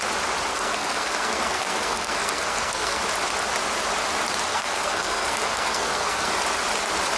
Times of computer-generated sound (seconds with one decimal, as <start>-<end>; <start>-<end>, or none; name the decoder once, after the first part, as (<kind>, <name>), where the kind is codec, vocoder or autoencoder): 0.5-3.0 (codec, SNAC); 4.5-6.3